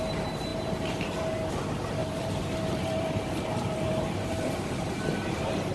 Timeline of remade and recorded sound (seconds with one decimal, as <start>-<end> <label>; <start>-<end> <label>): 0.0-0.5 recorded; 0.5-1.5 remade; 1.5-2.0 recorded; 2.0-5.7 remade